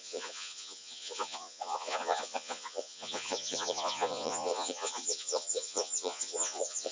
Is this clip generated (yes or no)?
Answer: yes